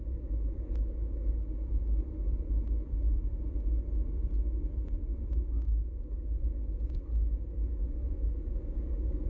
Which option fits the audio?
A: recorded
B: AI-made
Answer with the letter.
A